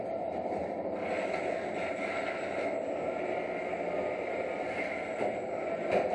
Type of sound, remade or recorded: recorded